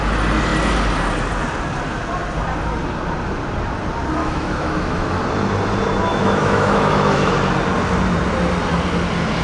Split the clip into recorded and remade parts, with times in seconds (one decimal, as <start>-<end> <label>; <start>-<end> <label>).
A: 0.0-4.2 recorded; 4.2-5.2 remade; 5.2-6.1 recorded; 6.1-7.3 remade; 7.3-9.4 recorded